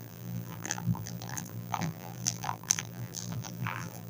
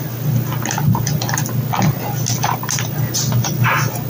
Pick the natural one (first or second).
second